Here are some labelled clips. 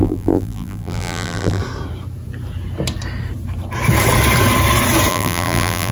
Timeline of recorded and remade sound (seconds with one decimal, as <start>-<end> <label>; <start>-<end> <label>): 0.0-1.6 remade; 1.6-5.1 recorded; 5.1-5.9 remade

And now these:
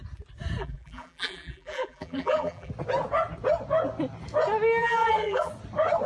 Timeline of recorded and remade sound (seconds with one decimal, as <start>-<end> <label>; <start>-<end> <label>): 0.0-0.6 recorded; 0.6-2.7 remade; 2.7-4.8 recorded; 4.8-5.5 remade; 5.5-6.1 recorded

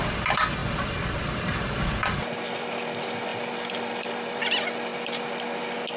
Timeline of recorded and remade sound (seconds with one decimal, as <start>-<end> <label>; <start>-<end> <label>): 0.0-3.3 recorded; 3.3-4.4 remade; 4.4-6.0 recorded

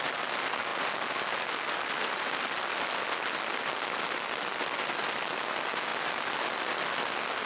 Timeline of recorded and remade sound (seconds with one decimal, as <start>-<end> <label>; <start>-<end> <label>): 0.0-7.5 recorded